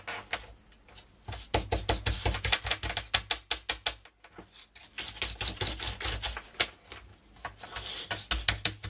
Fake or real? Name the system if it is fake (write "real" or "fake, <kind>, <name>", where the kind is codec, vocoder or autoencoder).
real